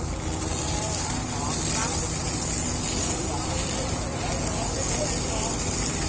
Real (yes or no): yes